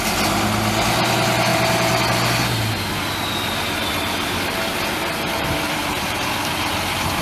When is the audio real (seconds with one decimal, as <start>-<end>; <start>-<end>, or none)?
0.0-7.2

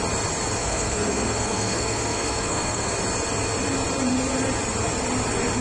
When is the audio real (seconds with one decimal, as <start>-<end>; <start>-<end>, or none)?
0.0-0.6; 2.9-5.6